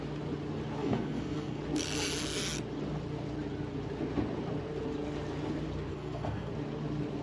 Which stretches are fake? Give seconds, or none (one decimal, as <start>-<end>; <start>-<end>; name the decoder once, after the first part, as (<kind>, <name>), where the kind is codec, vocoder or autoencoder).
0.8-1.6 (codec, SNAC); 5.9-6.5